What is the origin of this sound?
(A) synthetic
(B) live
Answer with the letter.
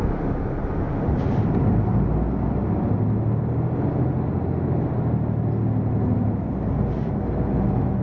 B